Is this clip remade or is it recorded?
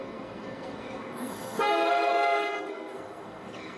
remade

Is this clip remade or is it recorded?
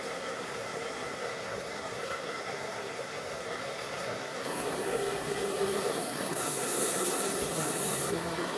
remade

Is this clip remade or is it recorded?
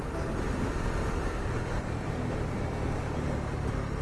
recorded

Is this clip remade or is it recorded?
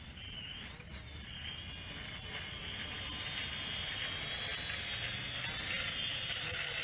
recorded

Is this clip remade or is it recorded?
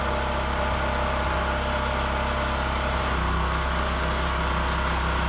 recorded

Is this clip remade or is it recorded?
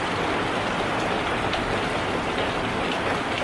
recorded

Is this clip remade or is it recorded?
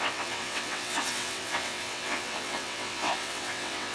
remade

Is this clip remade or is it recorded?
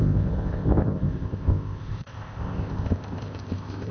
remade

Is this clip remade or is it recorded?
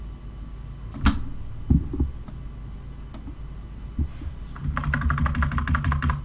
recorded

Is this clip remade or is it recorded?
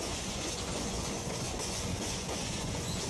remade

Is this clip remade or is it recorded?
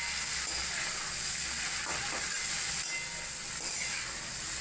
recorded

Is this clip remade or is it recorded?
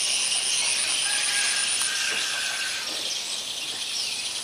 recorded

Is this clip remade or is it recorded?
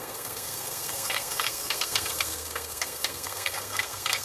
remade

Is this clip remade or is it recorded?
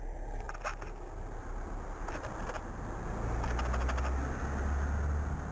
recorded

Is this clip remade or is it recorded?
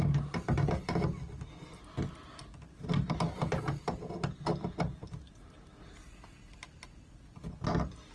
recorded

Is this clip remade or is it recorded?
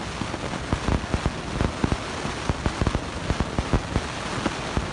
recorded